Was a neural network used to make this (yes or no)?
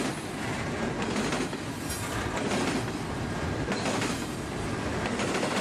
no